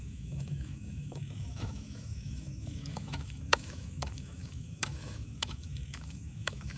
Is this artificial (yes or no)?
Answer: yes